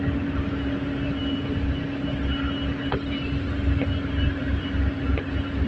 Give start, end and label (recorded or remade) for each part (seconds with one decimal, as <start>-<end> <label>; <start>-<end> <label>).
0.0-5.7 recorded